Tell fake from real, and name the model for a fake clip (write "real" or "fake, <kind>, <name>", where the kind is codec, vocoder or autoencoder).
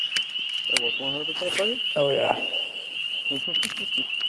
fake, vocoder, BigVGAN v2